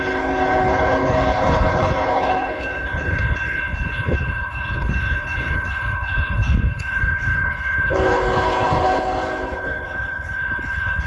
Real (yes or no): no